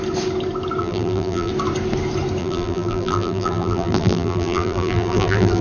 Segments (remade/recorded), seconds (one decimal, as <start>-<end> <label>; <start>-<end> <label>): 0.0-0.8 recorded; 0.8-1.5 remade; 1.5-2.4 recorded; 2.4-5.6 remade